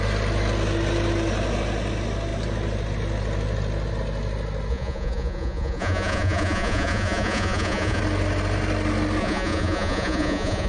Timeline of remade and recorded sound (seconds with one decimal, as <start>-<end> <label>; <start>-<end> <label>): 0.0-4.7 recorded; 4.7-8.0 remade; 8.0-9.2 recorded; 9.2-10.7 remade